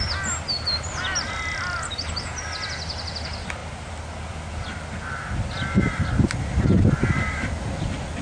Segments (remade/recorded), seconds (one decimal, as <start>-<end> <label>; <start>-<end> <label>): 0.0-8.2 recorded